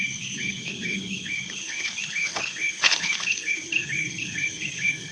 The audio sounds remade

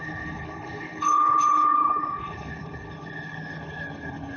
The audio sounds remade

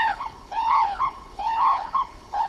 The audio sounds remade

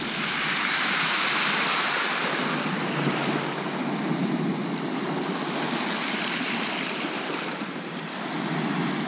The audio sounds recorded